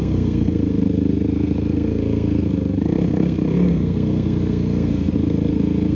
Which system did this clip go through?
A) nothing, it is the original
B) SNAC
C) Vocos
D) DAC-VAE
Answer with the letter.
B